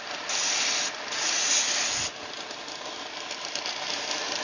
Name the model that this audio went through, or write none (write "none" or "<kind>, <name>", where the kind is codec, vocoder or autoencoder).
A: none